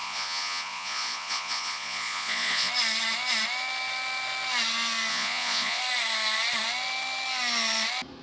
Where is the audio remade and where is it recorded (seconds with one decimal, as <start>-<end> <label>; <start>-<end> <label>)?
0.0-2.7 remade; 2.7-5.1 recorded; 5.1-5.8 remade; 5.8-8.2 recorded